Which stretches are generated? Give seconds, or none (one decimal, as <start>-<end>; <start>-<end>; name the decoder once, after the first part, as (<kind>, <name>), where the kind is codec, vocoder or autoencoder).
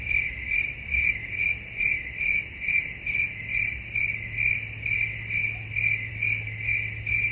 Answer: none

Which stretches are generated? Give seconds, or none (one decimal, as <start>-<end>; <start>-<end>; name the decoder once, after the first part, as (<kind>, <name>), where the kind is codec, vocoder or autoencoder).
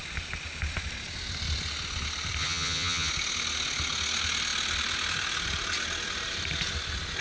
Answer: 2.4-3.1 (vocoder, HiFi-GAN)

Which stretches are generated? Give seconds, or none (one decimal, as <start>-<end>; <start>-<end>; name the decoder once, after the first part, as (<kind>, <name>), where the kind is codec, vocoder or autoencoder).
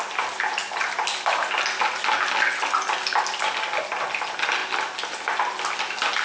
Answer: none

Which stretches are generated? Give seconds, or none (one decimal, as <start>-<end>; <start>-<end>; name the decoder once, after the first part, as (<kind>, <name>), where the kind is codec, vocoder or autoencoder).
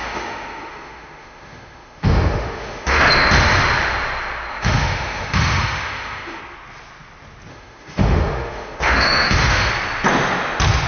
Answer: 0.0-3.0 (autoencoder, DAC-VAE); 4.5-6.4; 7.5-9.7